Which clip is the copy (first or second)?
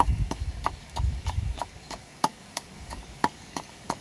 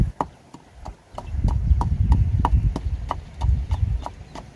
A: first